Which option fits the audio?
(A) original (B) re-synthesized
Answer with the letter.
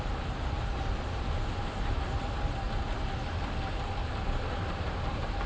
A